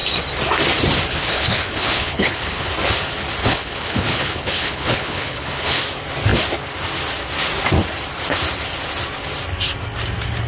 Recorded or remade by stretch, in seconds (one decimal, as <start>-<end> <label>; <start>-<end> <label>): 0.0-1.1 recorded; 1.1-2.7 remade; 2.7-3.4 recorded; 3.4-5.8 remade; 5.8-10.5 recorded